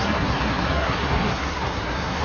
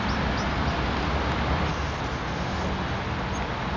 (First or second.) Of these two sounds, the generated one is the first